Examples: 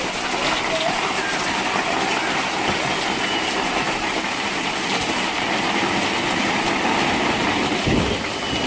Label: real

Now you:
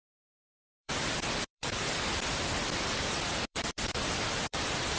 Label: fake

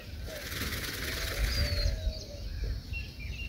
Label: real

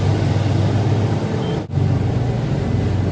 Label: real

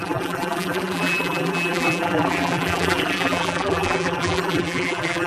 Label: fake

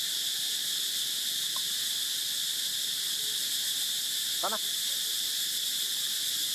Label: real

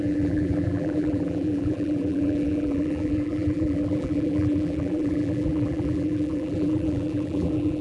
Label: fake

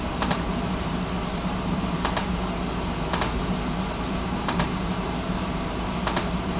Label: fake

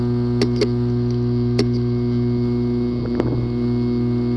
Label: real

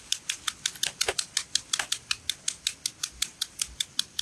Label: real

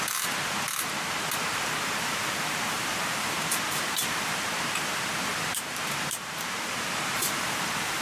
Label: fake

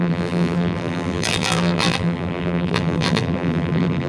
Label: fake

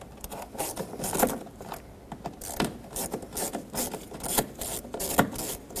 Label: fake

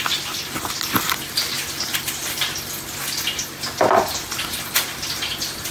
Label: real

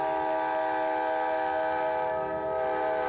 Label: real